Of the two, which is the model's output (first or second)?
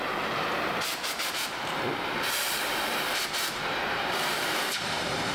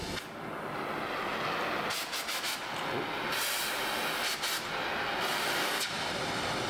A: first